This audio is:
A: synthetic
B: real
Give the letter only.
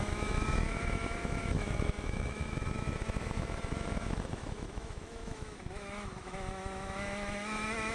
A